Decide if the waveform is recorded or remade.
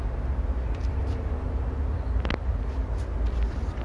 recorded